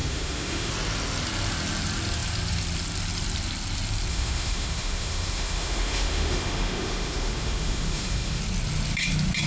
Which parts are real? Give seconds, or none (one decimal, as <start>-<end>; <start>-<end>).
0.7-4.1; 8.4-9.5